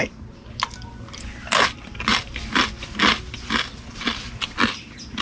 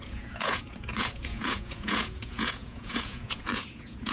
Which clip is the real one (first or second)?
first